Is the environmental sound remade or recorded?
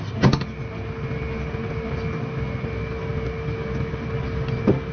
recorded